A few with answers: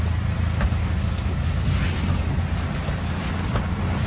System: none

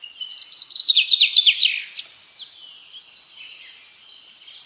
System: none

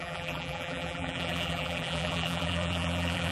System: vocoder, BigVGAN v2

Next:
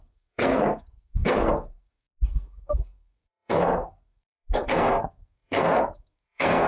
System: codec, SNAC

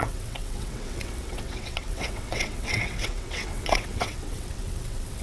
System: vocoder, WaveNeXt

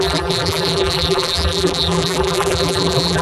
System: vocoder, BigVGAN v2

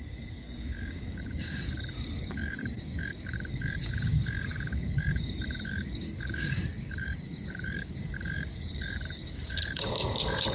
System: codec, DAC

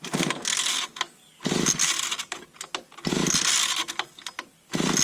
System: none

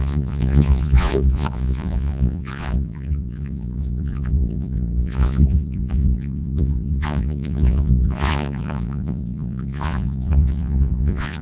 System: vocoder, Vocos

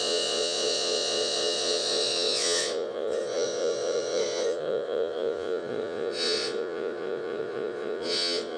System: vocoder, Vocos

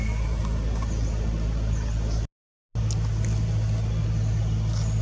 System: none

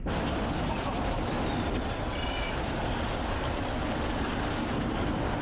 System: none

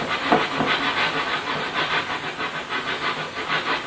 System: none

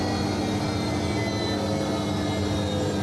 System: none